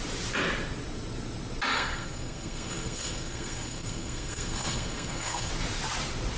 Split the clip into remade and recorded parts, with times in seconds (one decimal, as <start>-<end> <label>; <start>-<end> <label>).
0.0-1.7 recorded; 1.7-5.5 remade; 5.5-6.4 recorded